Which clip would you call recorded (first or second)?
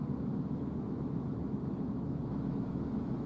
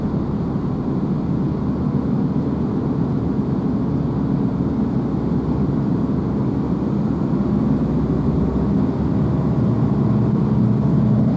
second